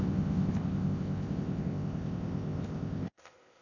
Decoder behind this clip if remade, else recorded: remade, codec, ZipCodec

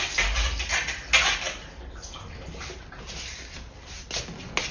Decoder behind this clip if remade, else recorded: recorded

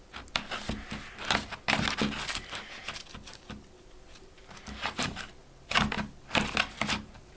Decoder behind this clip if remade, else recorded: recorded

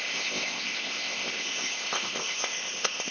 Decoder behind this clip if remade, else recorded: remade, codec, ZipCodec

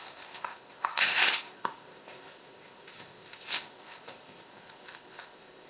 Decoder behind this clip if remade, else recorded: remade, codec, ZipCodec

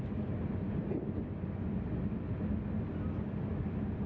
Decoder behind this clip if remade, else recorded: recorded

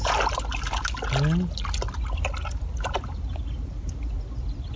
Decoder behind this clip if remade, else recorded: recorded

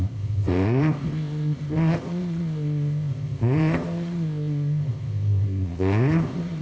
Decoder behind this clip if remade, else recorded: remade, codec, ZipCodec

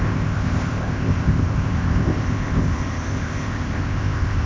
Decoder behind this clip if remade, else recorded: remade, codec, ZipCodec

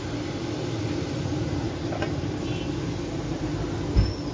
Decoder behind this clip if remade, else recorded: recorded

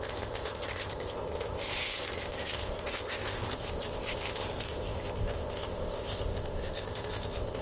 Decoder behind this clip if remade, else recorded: remade, codec, ZipCodec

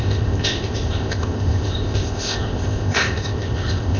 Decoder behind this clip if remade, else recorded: remade, codec, ZipCodec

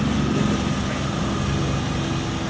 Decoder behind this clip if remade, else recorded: recorded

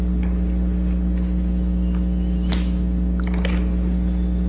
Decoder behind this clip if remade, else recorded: recorded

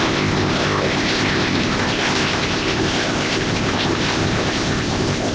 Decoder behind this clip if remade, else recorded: remade, codec, ZipCodec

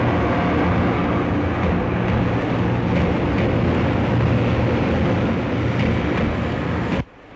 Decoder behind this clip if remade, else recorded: recorded